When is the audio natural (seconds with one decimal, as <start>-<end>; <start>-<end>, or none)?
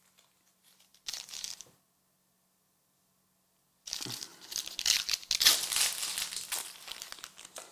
0.0-7.7